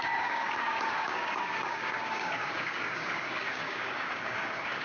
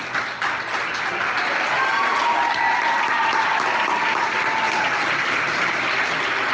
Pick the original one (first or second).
second